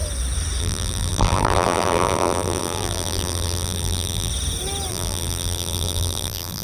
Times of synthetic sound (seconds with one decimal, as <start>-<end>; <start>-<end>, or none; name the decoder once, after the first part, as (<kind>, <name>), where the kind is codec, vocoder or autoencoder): 0.6-4.3 (vocoder, BigVGAN v2); 4.9-6.6